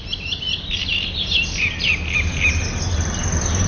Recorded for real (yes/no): yes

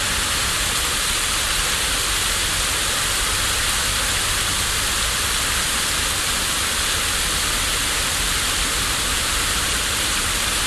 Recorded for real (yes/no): yes